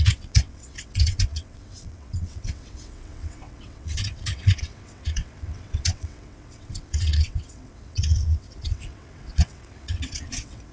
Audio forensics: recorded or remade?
remade